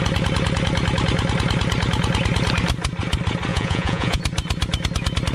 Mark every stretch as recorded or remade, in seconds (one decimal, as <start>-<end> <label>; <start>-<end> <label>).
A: 0.0-3.5 recorded; 3.5-4.2 remade; 4.2-5.3 recorded